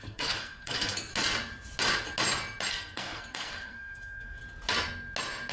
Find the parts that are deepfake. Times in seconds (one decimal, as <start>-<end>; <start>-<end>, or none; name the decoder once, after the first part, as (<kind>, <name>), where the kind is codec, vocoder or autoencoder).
0.0-1.1 (codec, SNAC); 2.7-4.4